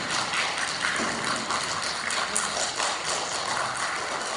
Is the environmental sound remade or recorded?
recorded